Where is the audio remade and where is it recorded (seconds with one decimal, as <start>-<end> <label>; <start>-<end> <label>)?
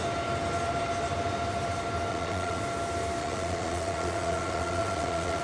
0.0-2.1 recorded; 2.1-2.6 remade; 2.6-3.2 recorded; 3.2-5.4 remade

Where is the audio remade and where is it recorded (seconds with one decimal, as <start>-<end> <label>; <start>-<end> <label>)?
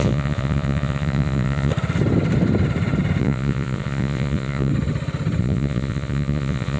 0.0-1.7 remade; 1.7-3.2 recorded; 3.2-4.7 remade; 4.7-5.4 recorded; 5.4-6.8 remade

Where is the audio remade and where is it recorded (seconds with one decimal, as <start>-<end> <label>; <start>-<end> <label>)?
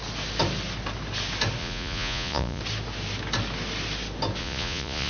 0.0-1.6 recorded; 1.6-2.6 remade; 2.6-4.4 recorded; 4.4-5.1 remade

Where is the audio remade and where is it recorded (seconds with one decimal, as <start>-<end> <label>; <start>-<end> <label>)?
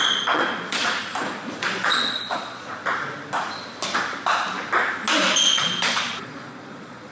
0.0-0.8 remade; 0.8-1.6 recorded; 1.6-2.8 remade; 2.8-5.5 recorded; 5.5-7.1 remade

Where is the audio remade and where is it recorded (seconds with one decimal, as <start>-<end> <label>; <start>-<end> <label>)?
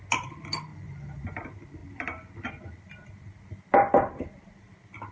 0.0-0.7 recorded; 0.7-1.4 remade; 1.4-5.1 recorded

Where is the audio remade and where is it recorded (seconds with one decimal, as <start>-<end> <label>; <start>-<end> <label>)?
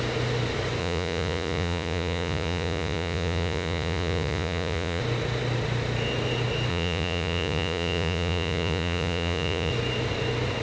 0.0-0.8 recorded; 0.8-5.0 remade; 5.0-6.7 recorded; 6.7-9.7 remade; 9.7-10.6 recorded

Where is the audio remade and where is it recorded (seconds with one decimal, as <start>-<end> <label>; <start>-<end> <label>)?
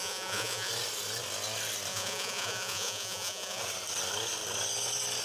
0.0-0.7 remade; 0.7-1.9 recorded; 1.9-3.6 remade; 3.6-5.2 recorded